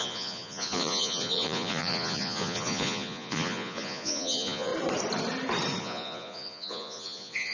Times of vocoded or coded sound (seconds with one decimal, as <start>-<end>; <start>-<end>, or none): 0.0-4.7; 5.8-7.5